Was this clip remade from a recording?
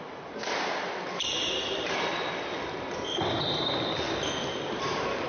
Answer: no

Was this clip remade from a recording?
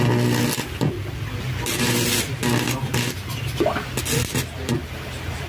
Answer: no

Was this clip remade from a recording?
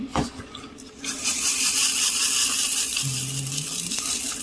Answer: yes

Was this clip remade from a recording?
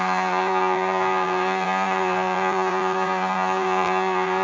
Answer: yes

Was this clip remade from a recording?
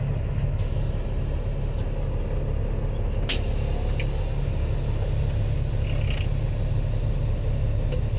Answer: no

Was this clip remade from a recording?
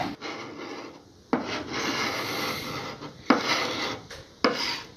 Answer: no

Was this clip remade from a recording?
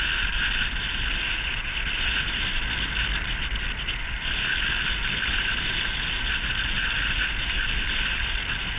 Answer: no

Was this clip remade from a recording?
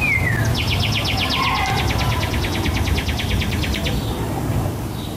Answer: no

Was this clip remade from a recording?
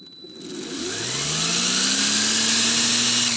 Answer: no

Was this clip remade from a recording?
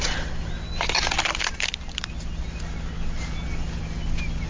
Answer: no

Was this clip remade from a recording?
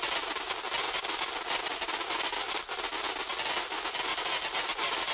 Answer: no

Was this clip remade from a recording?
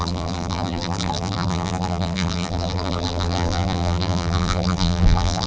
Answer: yes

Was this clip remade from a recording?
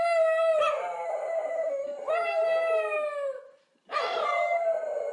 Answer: no